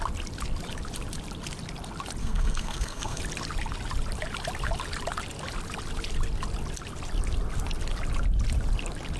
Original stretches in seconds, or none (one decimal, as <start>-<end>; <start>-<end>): 0.0-2.2; 3.2-9.2